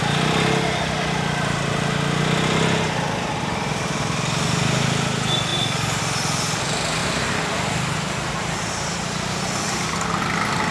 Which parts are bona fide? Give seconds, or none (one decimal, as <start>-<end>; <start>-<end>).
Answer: 0.0-7.0; 8.3-10.7